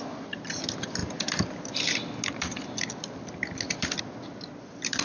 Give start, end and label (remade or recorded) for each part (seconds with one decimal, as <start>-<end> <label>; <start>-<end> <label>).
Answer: 0.0-5.0 recorded